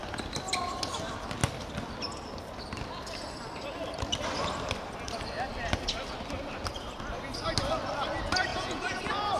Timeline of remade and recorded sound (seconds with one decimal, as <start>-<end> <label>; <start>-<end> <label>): 0.0-8.5 recorded; 8.5-9.0 remade; 9.0-9.4 recorded